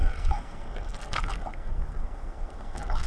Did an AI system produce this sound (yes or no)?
yes